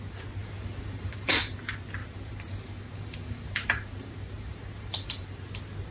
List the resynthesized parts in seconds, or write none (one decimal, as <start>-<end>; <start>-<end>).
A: 0.4-1.3; 2.0-5.5

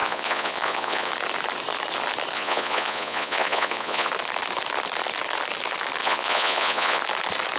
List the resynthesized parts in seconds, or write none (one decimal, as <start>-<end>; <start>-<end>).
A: 0.0-1.1; 2.3-4.1; 6.0-7.0

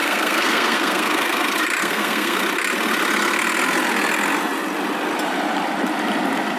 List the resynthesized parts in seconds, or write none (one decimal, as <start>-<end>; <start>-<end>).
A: 0.0-1.4; 1.8-2.4

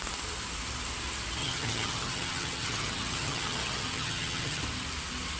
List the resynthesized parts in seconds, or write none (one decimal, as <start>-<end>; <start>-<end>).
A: 1.4-4.6

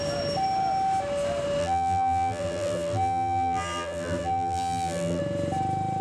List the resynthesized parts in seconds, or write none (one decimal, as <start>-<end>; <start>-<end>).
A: 1.6-5.2

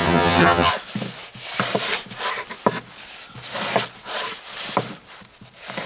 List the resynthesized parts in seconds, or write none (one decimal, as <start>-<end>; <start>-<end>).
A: 0.0-0.7

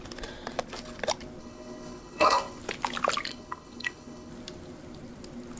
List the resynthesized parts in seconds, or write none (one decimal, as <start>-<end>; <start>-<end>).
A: 1.4-2.6; 3.3-4.3

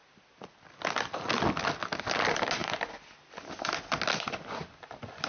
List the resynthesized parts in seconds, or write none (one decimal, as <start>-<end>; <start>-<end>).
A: none